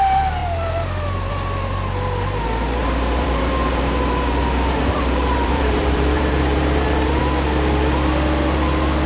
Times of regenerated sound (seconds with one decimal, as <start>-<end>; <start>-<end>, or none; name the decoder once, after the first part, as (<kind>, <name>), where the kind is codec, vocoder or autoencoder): 0.4-1.3 (vocoder, BigVGAN v2); 2.8-7.2